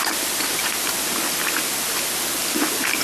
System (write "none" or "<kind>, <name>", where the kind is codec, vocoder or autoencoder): none